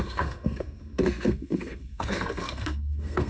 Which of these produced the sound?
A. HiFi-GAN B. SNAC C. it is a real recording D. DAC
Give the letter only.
B